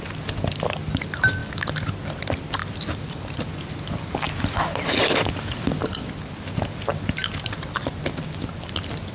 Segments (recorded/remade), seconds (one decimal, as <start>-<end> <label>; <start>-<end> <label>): 0.0-9.1 recorded